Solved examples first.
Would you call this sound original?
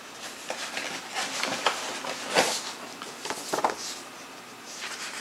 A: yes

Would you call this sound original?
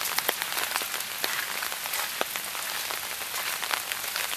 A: yes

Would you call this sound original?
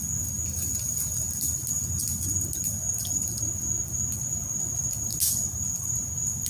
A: yes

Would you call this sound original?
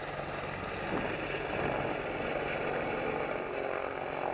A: yes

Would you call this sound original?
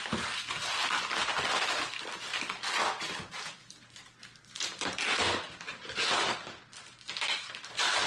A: yes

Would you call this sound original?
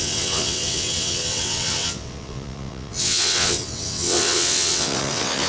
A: no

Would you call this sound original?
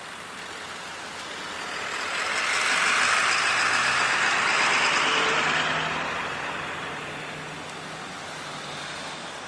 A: yes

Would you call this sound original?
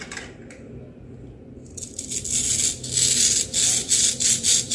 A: yes